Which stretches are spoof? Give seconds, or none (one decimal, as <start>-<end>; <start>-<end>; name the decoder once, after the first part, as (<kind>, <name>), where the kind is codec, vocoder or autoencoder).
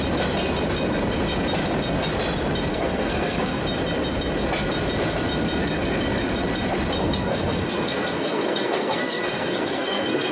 2.7-3.6 (codec, SNAC); 7.0-10.3